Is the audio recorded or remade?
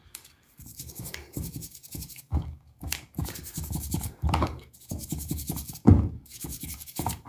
remade